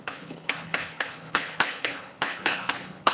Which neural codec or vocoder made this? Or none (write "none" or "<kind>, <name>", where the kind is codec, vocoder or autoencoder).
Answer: codec, HILCodec